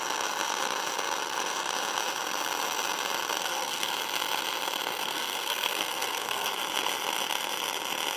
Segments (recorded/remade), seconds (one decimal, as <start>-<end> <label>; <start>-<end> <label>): 0.0-3.4 recorded; 3.4-3.9 remade; 3.9-5.0 recorded; 5.0-6.5 remade; 6.5-8.2 recorded